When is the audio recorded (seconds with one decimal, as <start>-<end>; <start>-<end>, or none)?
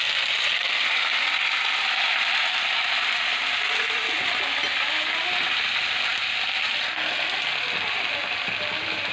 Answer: 0.0-9.1